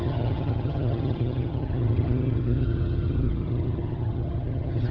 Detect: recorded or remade remade